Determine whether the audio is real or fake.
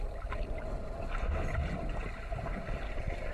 real